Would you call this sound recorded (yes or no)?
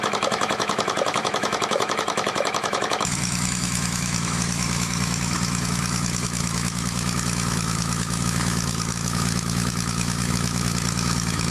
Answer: no